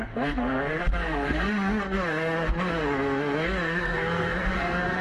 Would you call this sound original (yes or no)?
no